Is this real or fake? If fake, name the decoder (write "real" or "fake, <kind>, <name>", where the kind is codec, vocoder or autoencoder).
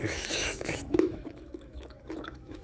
fake, autoencoder, DAC-VAE